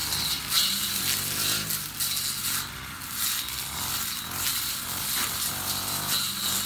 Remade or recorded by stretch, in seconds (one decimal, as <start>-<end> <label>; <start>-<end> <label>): 0.0-6.7 remade